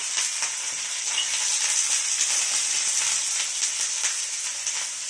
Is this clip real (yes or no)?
yes